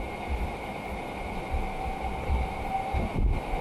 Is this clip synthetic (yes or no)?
yes